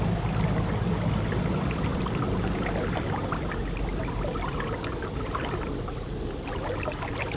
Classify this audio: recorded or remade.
recorded